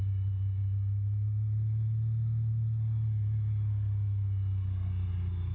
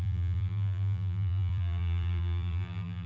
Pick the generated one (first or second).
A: second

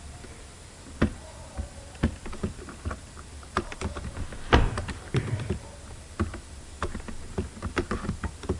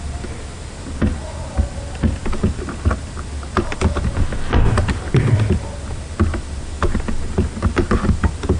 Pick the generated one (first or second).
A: first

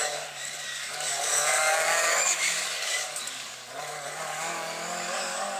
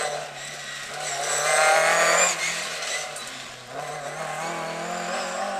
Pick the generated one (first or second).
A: first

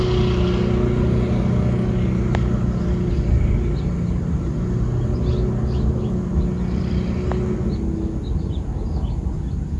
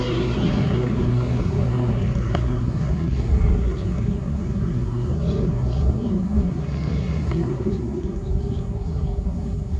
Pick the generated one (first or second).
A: second